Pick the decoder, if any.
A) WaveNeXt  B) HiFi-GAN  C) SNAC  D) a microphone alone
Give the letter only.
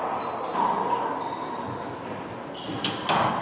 D